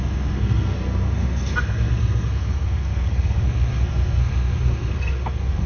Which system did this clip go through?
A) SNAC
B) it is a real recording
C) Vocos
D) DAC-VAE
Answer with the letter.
A